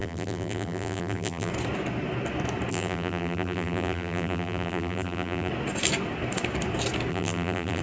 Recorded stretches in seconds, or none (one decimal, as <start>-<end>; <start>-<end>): 1.5-2.7; 5.5-7.1